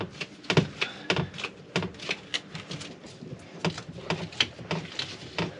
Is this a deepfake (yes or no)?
no